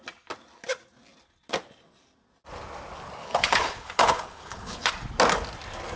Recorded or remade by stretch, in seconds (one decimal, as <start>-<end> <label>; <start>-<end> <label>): 0.0-3.2 recorded; 3.2-4.9 remade; 4.9-6.0 recorded